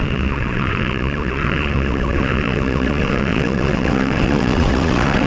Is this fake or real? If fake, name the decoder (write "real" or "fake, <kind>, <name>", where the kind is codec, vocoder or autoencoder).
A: fake, vocoder, WaveNeXt